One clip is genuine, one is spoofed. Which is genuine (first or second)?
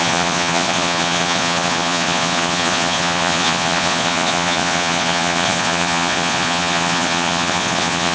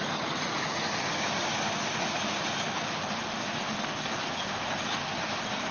second